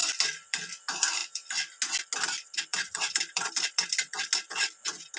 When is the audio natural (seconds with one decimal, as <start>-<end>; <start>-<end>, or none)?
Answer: 0.7-1.2; 1.8-2.7; 4.2-5.2